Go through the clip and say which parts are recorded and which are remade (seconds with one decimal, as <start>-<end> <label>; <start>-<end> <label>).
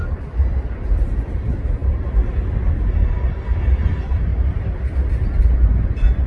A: 0.0-4.3 recorded; 4.3-4.8 remade; 4.8-6.3 recorded